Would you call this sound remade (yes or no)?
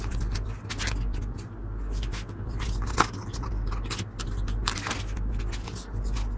no